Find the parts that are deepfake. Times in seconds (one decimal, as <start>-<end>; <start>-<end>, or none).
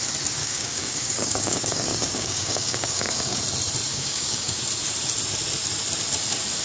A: 0.4-3.4; 3.9-4.6